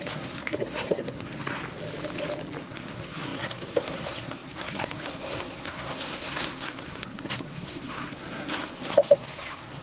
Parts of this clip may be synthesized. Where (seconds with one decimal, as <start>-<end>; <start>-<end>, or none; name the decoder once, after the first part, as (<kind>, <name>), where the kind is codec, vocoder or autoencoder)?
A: 0.0-1.6 (codec, SNAC); 2.6-9.8